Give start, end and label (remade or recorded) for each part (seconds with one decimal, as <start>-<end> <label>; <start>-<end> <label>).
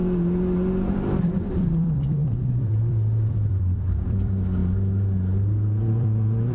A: 0.0-0.9 recorded; 0.9-4.6 remade; 4.6-5.8 recorded; 5.8-6.5 remade